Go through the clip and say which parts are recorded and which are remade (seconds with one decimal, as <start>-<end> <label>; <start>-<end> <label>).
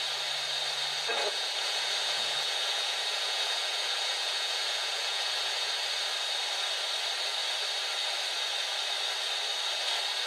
0.0-1.1 recorded; 1.1-5.7 remade; 5.7-10.3 recorded